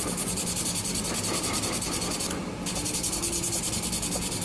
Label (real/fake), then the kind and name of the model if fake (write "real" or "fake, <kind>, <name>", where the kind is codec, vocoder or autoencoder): real